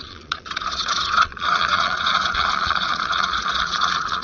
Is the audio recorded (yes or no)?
no